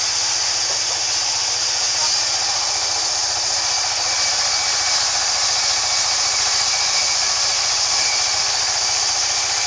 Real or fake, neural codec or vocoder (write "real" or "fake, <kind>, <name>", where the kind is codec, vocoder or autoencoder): real